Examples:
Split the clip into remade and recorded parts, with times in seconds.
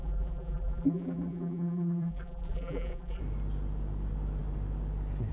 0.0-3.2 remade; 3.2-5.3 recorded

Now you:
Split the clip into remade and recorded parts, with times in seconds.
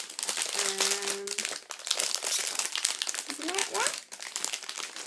0.0-5.1 recorded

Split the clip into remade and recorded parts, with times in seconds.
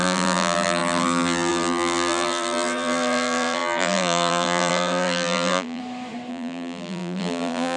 0.0-5.8 remade; 5.8-6.3 recorded; 6.3-7.8 remade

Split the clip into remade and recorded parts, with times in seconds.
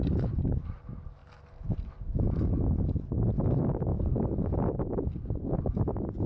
0.0-6.3 recorded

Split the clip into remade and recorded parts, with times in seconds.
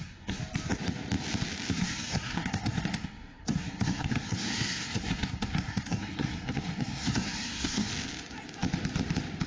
0.0-0.4 remade; 0.4-1.7 recorded; 1.7-7.9 remade; 7.9-9.5 recorded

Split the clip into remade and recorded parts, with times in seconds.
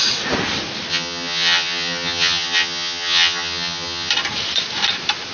0.0-0.9 recorded; 0.9-4.1 remade; 4.1-5.3 recorded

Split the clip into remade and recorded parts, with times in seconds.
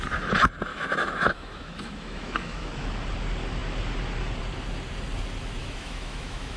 0.0-0.7 recorded; 0.7-2.7 remade; 2.7-5.6 recorded; 5.6-6.6 remade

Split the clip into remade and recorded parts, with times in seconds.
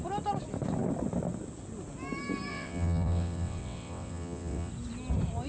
0.0-2.5 recorded; 2.5-4.7 remade; 4.7-5.5 recorded